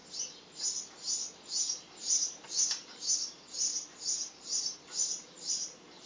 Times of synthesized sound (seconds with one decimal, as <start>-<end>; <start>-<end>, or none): 1.8-3.7; 4.3-6.1